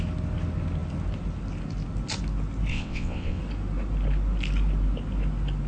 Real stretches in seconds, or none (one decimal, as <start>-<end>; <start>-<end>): 0.0-2.7; 3.4-5.7